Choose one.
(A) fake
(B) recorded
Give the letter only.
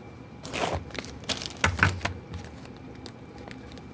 B